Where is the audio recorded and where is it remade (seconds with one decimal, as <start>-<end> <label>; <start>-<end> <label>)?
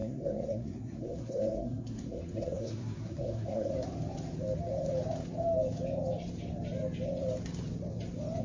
0.0-3.7 remade; 3.7-8.4 recorded